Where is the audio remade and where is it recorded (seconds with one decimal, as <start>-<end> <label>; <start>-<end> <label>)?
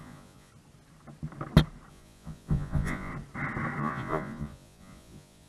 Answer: 0.0-0.5 remade; 0.5-1.9 recorded; 1.9-3.1 remade; 3.1-3.8 recorded; 3.8-5.5 remade